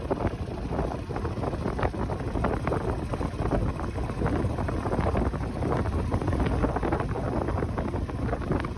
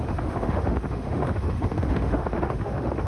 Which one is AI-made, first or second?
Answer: second